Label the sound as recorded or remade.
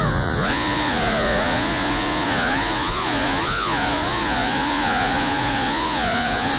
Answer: remade